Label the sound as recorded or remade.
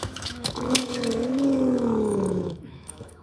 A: remade